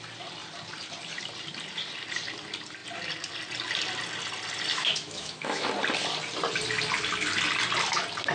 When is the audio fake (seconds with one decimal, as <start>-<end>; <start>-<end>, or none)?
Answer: 4.7-5.7